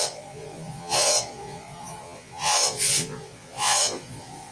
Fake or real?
fake